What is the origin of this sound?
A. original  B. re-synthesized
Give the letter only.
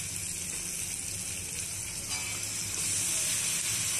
A